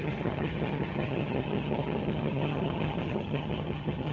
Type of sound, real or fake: fake